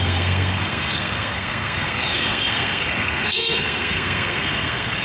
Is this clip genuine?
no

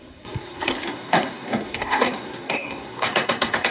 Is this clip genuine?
no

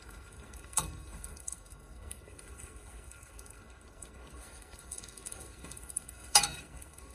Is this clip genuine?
no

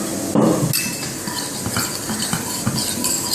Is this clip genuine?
yes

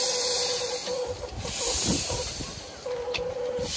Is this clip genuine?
yes